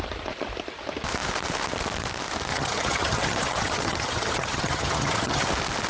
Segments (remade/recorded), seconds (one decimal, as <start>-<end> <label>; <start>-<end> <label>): 0.0-2.5 recorded; 2.5-5.5 remade; 5.5-5.9 recorded